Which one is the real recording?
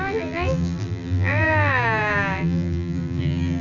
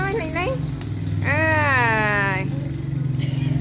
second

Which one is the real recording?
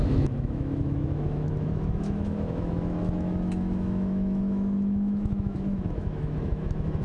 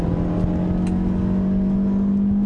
second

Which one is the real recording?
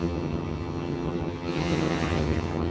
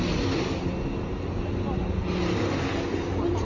second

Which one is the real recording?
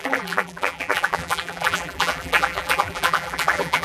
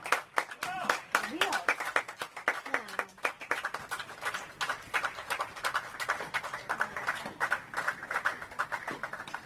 second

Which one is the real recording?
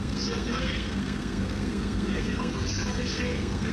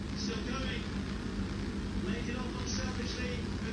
second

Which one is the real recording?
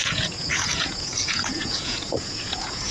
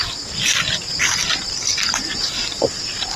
second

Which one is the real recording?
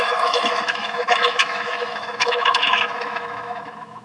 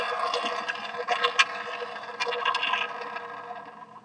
second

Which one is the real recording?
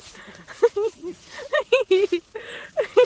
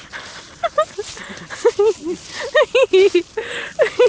second